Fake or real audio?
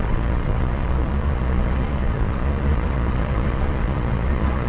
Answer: fake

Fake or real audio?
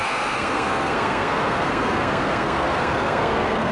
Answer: fake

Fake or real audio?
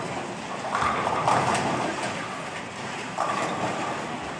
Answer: real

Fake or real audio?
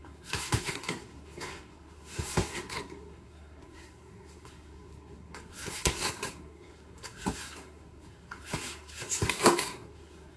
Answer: fake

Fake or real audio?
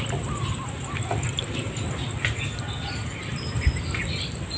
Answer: real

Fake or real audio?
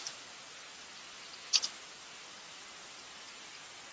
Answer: real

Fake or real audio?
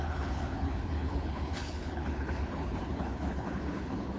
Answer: fake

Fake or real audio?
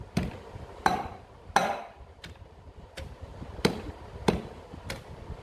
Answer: real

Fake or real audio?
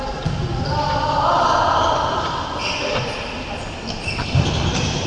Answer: real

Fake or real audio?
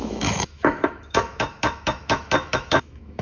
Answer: fake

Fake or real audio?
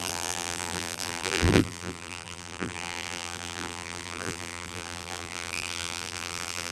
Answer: fake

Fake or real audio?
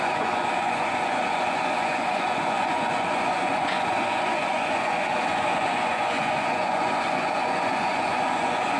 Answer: fake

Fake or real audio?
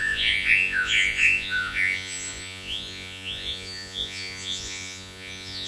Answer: fake